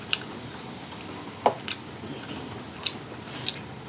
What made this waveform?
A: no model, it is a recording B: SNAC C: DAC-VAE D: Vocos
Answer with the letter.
A